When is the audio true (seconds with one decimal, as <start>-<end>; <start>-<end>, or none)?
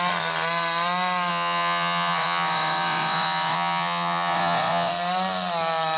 0.0-1.3; 4.9-6.0